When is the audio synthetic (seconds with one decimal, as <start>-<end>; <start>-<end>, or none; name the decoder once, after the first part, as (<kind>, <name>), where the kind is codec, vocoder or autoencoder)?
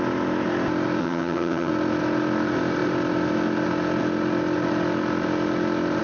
1.0-1.7 (vocoder, HiFi-GAN)